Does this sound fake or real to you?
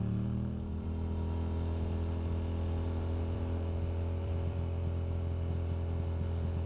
fake